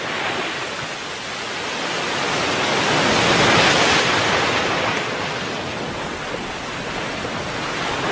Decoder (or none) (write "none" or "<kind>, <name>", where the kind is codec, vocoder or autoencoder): none